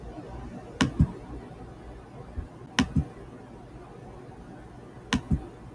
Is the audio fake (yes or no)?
no